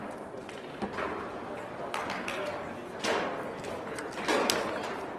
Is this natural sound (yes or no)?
yes